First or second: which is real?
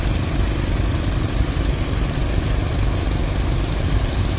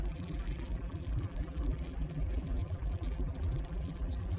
first